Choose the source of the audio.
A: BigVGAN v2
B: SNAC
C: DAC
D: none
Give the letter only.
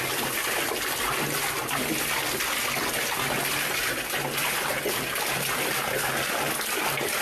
D